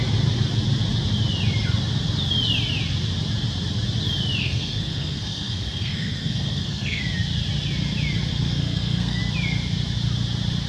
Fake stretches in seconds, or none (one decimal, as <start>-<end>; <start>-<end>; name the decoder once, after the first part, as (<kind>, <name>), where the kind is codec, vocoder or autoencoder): 4.4-7.0 (codec, SNAC); 8.3-9.2